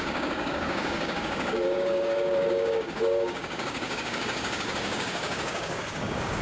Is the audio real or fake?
fake